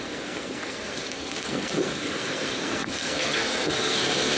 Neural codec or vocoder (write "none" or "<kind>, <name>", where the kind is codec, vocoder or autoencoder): codec, SNAC